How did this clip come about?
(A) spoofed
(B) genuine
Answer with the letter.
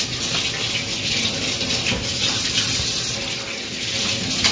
B